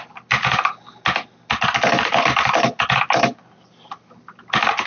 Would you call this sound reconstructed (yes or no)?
no